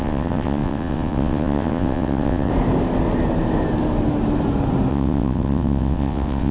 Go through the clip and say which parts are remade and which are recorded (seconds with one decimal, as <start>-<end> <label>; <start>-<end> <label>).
0.0-2.5 remade; 2.5-4.9 recorded; 4.9-6.5 remade